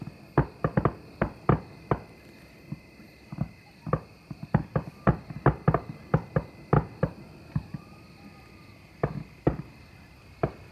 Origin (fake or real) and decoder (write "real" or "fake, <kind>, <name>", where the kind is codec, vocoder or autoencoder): real